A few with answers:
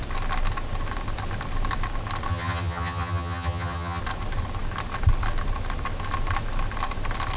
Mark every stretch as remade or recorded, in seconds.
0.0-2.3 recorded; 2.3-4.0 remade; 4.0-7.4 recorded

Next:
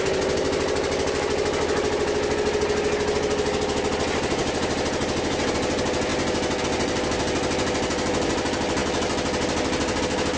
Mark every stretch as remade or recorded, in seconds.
0.0-10.4 recorded